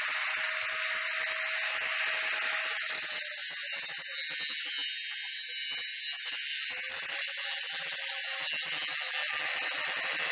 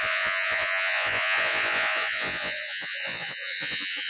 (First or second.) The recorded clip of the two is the first